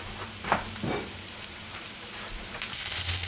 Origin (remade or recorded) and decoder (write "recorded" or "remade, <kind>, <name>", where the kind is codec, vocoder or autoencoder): remade, vocoder, BigVGAN v2